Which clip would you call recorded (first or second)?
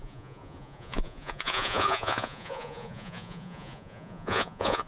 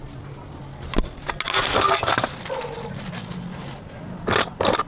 second